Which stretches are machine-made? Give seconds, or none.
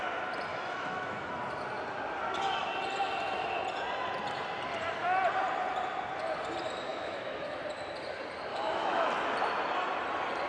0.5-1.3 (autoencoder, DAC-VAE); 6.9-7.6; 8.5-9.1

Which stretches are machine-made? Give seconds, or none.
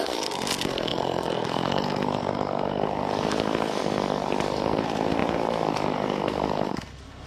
0.0-7.3 (codec, SNAC)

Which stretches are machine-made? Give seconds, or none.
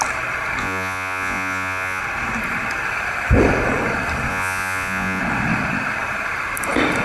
0.6-2.0 (vocoder, Vocos); 4.3-5.2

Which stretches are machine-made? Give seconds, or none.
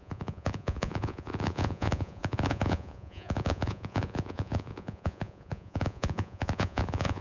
0.0-7.2 (vocoder, Vocos)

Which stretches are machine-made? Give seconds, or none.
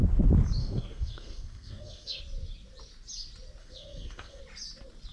0.6-2.2 (codec, SNAC); 3.6-4.4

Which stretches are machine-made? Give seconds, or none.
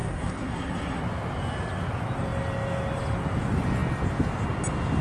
0.0-1.0 (codec, SNAC)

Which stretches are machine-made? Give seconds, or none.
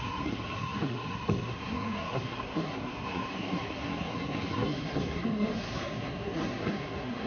0.0-7.3 (codec, SNAC)